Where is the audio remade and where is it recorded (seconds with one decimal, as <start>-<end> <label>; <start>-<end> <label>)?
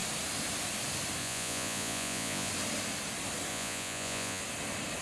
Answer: 0.0-1.2 recorded; 1.2-2.5 remade; 2.5-3.5 recorded; 3.5-4.4 remade; 4.4-5.0 recorded